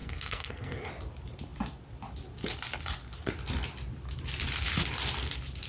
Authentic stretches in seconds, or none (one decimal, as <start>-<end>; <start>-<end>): 0.9-5.7